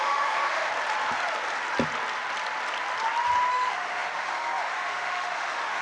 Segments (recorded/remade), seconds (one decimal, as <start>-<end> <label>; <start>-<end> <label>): 0.0-0.7 remade; 0.7-3.5 recorded; 3.5-5.8 remade